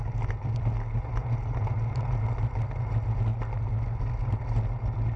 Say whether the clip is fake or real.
real